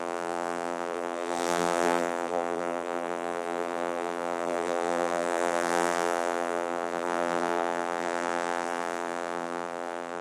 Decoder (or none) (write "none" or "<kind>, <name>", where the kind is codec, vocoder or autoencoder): vocoder, BigVGAN v2